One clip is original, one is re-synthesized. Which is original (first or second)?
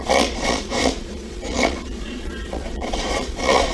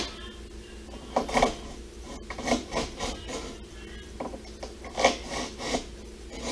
second